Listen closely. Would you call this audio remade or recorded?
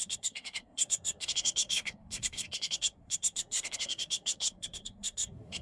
remade